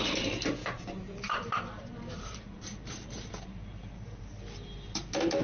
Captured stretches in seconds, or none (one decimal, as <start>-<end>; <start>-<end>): 0.0-0.6; 3.3-3.7; 4.2-5.4